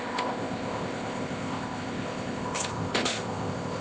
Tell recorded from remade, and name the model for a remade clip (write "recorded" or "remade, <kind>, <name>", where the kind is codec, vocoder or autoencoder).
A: remade, codec, ZipCodec